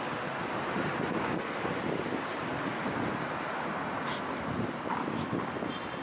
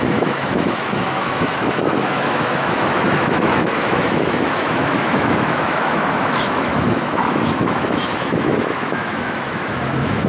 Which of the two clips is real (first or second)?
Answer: first